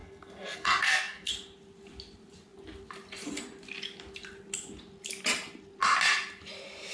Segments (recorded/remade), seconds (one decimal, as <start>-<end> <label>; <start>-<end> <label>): 0.0-1.3 remade; 1.3-6.9 recorded